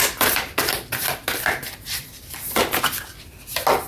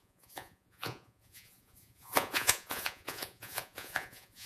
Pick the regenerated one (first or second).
second